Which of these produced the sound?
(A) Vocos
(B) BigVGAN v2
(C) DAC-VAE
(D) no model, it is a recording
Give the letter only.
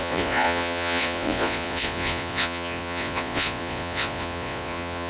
A